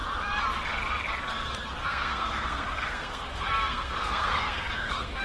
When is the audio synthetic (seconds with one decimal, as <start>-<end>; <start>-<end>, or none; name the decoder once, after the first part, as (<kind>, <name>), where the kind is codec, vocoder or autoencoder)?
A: 1.8-5.2 (codec, SNAC)